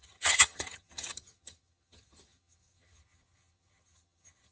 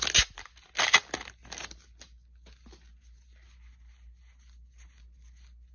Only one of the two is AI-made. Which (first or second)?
first